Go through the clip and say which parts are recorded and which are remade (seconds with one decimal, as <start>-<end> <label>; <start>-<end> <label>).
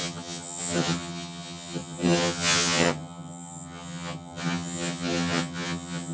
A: 0.0-6.1 remade